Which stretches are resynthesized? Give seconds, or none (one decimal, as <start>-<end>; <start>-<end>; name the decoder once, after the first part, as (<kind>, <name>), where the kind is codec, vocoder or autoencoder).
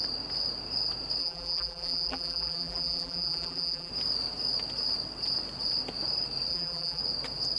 1.2-3.9 (vocoder, BigVGAN v2); 6.5-7.0